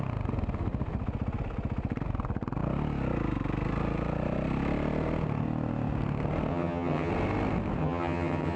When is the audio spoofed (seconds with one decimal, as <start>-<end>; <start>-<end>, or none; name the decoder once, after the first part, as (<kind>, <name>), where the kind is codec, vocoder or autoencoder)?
6.5-7.1 (vocoder, HiFi-GAN); 7.8-8.6